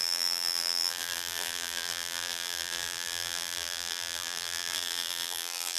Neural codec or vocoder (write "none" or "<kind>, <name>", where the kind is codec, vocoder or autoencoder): vocoder, BigVGAN v2